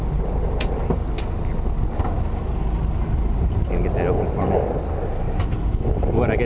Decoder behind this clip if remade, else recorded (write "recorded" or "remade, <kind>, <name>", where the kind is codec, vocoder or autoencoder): recorded